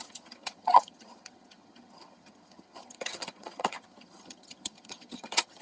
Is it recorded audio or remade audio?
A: remade